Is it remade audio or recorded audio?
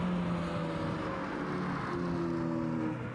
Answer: recorded